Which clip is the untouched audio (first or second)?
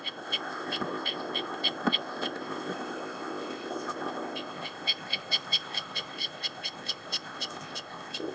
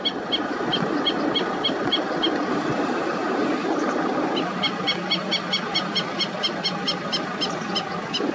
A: second